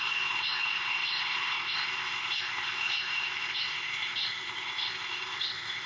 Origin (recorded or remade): remade